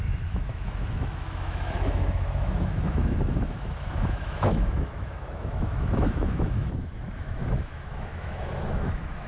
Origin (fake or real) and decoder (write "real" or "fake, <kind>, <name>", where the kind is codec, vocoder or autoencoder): fake, autoencoder, DAC-VAE